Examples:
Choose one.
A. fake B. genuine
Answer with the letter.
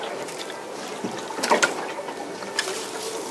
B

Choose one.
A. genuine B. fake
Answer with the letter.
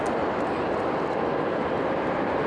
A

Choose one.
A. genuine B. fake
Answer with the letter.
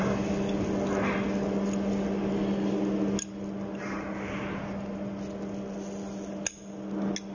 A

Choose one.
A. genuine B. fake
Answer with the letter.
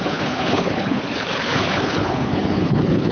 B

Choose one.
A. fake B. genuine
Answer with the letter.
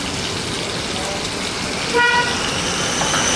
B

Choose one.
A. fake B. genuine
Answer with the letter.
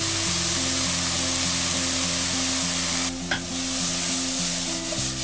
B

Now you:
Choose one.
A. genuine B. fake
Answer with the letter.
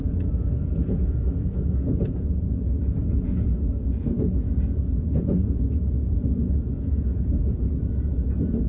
B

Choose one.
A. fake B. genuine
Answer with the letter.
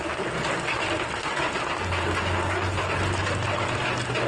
B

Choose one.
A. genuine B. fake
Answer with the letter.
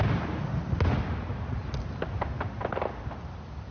A